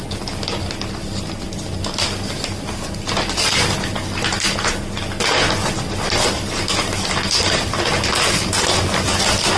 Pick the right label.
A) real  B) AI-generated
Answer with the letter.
A